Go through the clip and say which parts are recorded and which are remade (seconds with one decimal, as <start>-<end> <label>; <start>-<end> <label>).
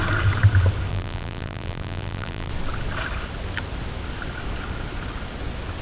0.0-0.9 recorded; 0.9-2.5 remade; 2.5-5.8 recorded